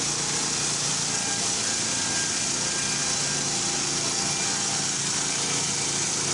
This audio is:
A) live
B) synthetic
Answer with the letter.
A